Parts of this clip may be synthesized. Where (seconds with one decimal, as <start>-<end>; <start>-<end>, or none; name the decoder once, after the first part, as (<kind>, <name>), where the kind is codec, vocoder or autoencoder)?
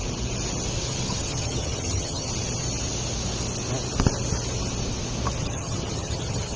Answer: 0.8-2.3 (vocoder, HiFi-GAN); 5.4-6.6